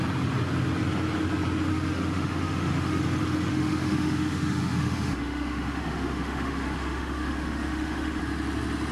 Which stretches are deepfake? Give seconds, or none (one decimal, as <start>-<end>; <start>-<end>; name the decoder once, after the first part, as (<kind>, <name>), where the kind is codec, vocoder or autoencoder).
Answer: 1.7-3.0 (autoencoder, DAC-VAE); 3.5-8.2